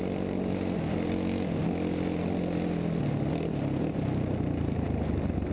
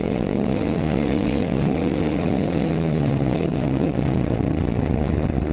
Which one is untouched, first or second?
first